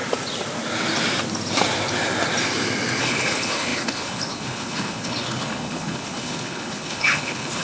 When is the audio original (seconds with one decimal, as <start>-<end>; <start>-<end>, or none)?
0.0-3.0